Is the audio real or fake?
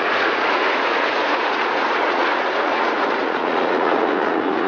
fake